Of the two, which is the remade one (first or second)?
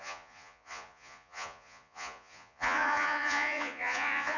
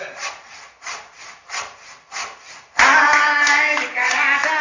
first